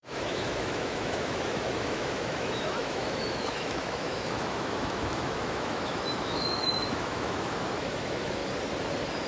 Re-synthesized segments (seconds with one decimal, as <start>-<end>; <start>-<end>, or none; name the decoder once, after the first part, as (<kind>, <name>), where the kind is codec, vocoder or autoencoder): 0.0-8.4 (autoencoder, DAC-VAE)